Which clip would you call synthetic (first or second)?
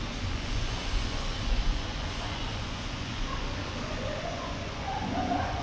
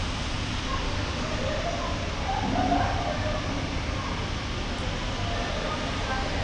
first